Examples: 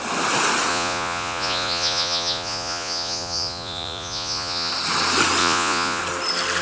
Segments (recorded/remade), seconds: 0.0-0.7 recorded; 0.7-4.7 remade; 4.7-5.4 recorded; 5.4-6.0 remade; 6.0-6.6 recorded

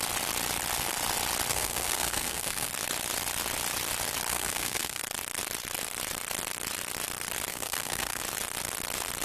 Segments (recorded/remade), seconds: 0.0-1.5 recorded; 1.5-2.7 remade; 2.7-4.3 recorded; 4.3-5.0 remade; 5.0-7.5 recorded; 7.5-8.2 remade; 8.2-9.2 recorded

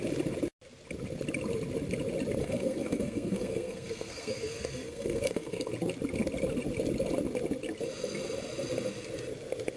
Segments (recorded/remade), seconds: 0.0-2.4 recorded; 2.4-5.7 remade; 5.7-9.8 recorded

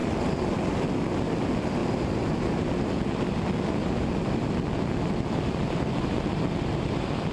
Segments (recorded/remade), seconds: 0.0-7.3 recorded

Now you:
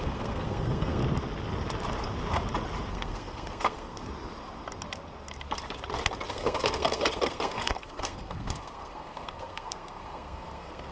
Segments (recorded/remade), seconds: 0.0-1.0 remade; 1.0-2.9 recorded; 2.9-4.1 remade; 4.1-6.3 recorded; 6.3-10.9 remade

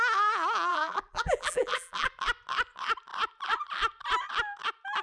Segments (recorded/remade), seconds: 0.0-0.7 recorded; 0.7-2.1 remade; 2.1-5.0 recorded

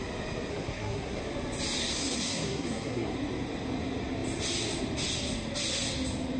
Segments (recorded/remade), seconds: 0.0-0.5 recorded; 0.5-1.2 remade; 1.2-1.8 recorded; 1.8-3.1 remade; 3.1-6.4 recorded

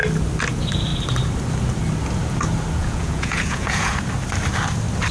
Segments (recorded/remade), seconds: 0.0-2.8 recorded; 2.8-3.9 remade; 3.9-5.1 recorded